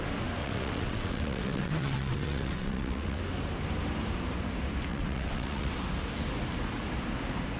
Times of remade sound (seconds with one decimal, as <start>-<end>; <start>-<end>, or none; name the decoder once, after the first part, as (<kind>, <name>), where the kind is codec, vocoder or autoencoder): 0.4-3.2 (vocoder, WaveNeXt); 4.9-5.7